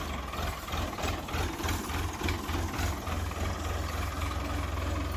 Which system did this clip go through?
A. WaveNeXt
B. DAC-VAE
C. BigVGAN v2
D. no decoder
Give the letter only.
D